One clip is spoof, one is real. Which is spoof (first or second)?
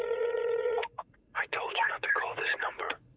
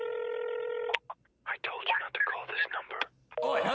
first